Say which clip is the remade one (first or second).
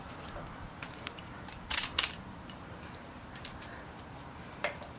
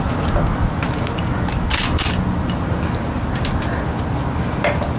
first